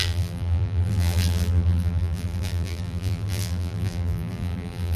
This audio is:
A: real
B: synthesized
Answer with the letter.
B